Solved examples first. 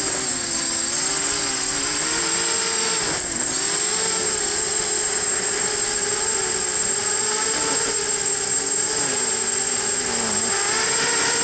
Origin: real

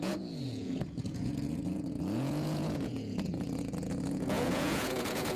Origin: fake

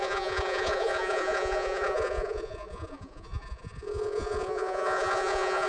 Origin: fake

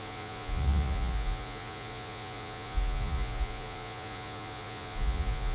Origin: fake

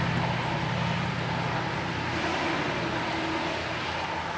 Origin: real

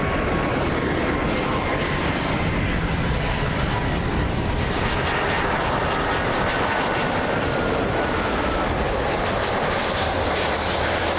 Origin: real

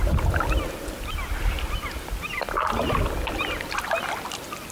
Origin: real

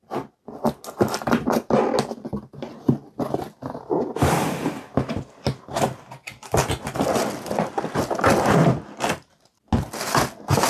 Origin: real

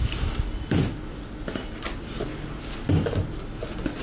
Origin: real